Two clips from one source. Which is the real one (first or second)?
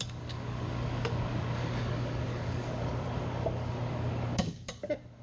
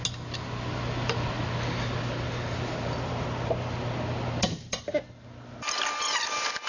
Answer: second